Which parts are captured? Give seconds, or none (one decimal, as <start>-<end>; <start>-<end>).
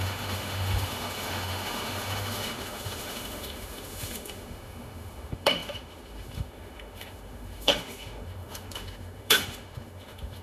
none